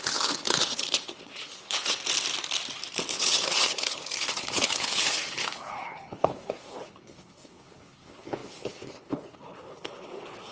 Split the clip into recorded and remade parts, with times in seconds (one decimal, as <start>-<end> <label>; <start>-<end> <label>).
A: 0.0-2.0 remade; 2.0-3.1 recorded; 3.1-10.5 remade